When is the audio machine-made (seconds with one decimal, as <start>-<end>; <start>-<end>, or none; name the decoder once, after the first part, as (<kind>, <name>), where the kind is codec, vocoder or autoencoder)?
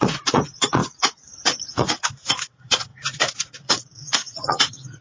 0.0-5.0 (vocoder, Vocos)